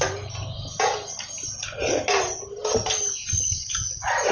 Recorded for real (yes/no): yes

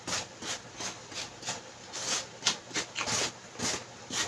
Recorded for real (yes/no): yes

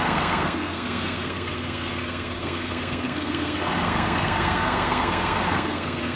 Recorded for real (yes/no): no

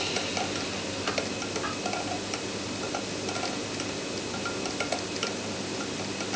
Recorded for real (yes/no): yes